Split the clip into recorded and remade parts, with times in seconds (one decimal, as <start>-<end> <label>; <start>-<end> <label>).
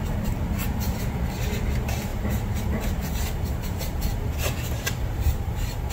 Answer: 0.0-2.1 recorded; 2.1-5.9 remade